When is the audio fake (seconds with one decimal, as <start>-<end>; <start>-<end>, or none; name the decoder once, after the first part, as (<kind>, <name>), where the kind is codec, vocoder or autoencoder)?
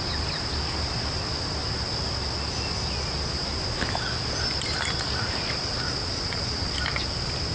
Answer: 6.0-6.7 (vocoder, Vocos)